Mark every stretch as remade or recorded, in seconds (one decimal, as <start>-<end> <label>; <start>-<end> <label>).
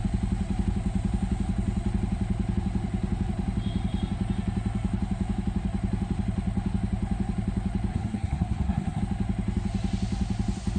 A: 0.0-7.9 recorded; 7.9-9.0 remade; 9.0-10.8 recorded